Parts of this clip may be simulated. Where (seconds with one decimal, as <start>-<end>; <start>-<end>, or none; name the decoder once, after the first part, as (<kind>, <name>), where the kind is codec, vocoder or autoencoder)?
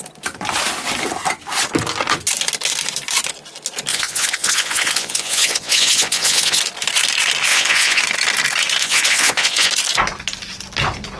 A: 3.9-6.6 (vocoder, Vocos); 7.5-8.0; 8.8-9.7